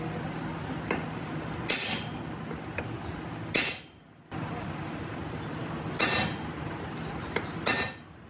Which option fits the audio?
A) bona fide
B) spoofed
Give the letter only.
A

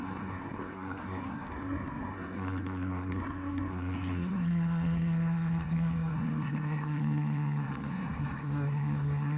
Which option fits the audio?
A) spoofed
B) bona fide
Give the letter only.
A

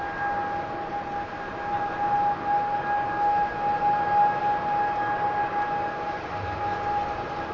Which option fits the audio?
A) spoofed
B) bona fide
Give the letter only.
B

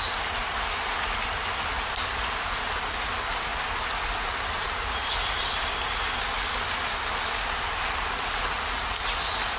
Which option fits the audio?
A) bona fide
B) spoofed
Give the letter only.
A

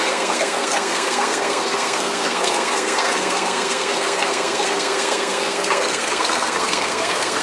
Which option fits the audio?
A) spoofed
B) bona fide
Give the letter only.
A